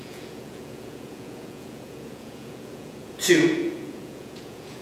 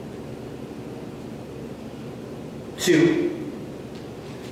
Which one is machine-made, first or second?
first